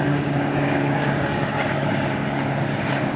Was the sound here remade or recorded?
remade